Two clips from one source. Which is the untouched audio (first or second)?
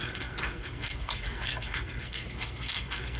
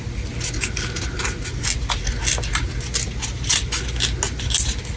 second